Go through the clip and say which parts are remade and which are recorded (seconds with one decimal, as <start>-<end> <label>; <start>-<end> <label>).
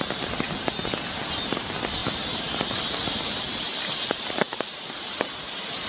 0.0-2.0 recorded; 2.0-5.2 remade; 5.2-5.9 recorded